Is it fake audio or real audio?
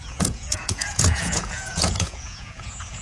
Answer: fake